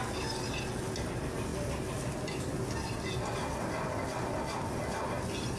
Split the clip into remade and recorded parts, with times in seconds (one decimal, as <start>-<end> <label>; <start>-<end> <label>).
0.0-5.6 recorded